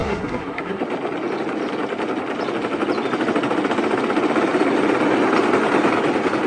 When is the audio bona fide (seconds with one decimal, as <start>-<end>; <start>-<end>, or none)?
0.8-6.5